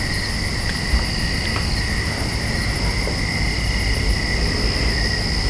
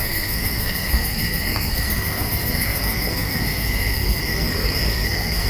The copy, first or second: second